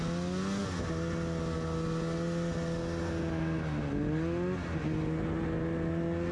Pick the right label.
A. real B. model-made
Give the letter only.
A